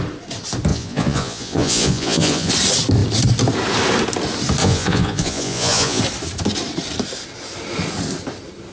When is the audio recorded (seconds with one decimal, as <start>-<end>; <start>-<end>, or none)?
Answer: 0.0-0.7; 2.5-4.6; 6.0-8.7